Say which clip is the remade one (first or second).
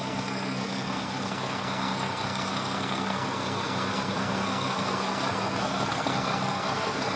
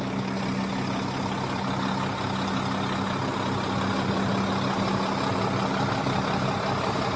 first